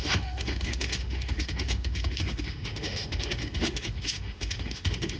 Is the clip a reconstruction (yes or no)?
yes